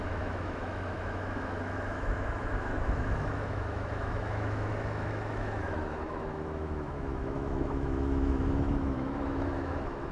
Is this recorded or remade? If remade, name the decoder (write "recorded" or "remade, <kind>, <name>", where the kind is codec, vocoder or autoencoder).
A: remade, autoencoder, DAC-VAE